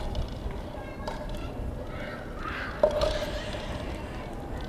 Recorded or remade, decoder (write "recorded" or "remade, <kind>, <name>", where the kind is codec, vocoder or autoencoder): recorded